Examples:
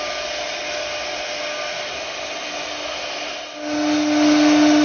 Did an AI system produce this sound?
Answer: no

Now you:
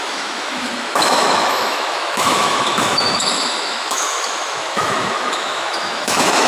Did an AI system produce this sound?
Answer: yes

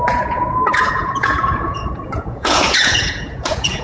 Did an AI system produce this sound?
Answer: yes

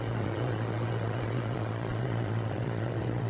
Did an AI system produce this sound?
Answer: yes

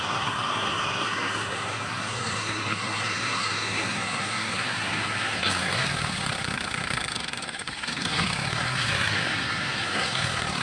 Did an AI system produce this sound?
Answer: yes